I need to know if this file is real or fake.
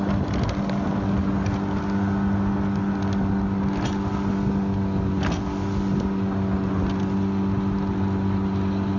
real